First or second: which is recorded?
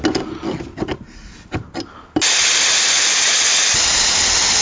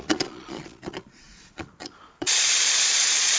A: first